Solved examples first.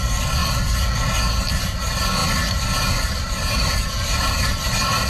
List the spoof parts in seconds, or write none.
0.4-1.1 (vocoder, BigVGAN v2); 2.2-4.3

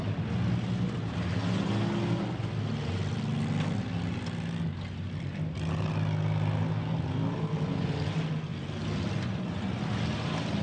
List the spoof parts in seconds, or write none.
8.5-10.6 (vocoder, BigVGAN v2)

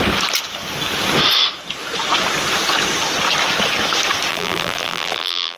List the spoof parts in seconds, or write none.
4.3-5.6 (vocoder, BigVGAN v2)